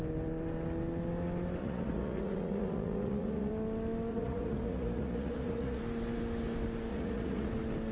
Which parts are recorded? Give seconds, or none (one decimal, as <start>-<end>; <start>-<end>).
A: 0.0-1.6; 3.5-4.1; 5.8-6.9; 7.5-7.9